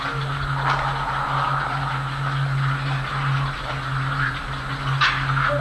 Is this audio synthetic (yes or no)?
no